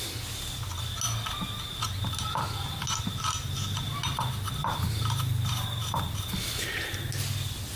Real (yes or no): yes